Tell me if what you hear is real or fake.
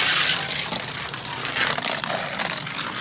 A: real